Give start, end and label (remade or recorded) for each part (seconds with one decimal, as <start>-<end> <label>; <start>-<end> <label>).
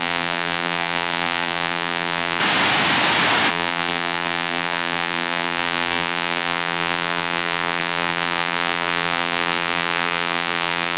0.0-2.4 remade; 2.4-3.5 recorded; 3.5-11.0 remade